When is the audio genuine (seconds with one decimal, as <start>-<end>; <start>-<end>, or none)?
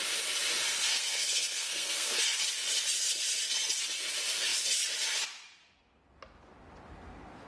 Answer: 0.0-0.8; 2.2-7.5